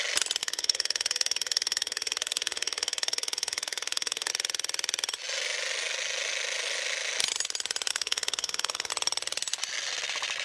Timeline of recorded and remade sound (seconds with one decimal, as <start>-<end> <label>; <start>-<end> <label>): 0.0-0.4 recorded; 0.4-4.3 remade; 4.3-7.9 recorded; 7.9-8.9 remade; 8.9-10.4 recorded